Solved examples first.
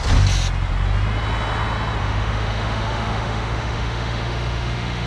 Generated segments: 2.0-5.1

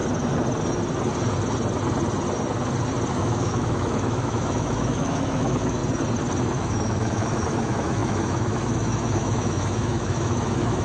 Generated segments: 3.1-5.8; 6.4-10.8

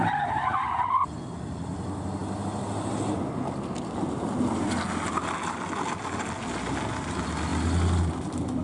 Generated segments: none